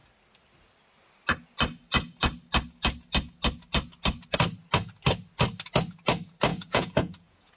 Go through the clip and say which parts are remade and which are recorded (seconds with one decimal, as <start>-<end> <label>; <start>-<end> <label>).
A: 0.0-6.5 recorded; 6.5-7.6 remade